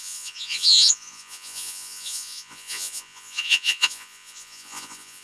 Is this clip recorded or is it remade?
remade